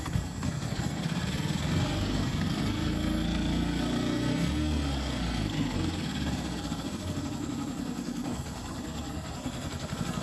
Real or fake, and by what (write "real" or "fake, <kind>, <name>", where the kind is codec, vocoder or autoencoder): fake, codec, SNAC